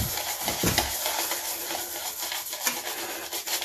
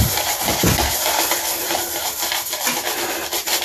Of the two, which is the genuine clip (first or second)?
first